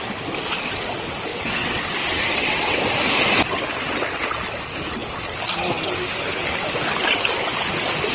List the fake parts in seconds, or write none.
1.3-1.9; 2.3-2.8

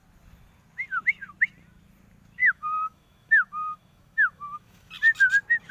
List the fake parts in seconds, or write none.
2.4-4.9